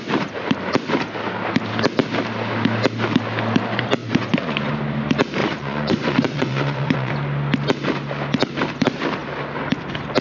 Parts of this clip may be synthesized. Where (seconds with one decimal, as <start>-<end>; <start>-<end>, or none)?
4.0-4.7; 5.4-7.1